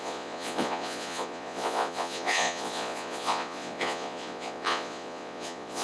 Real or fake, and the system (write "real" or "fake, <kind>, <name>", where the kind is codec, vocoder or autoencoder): fake, vocoder, Vocos